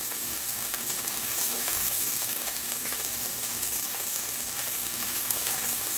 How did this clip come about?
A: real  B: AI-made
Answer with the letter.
B